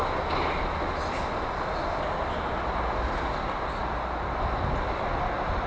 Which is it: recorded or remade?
recorded